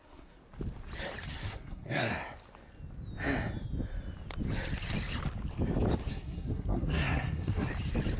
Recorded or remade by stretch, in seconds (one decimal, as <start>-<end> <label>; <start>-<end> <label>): 0.0-0.4 remade; 0.4-1.3 recorded; 1.3-2.1 remade; 2.1-6.1 recorded; 6.1-7.7 remade; 7.7-8.2 recorded